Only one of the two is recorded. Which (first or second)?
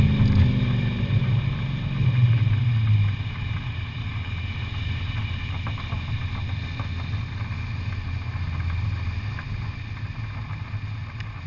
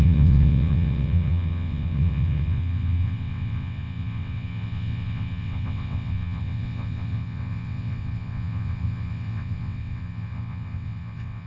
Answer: first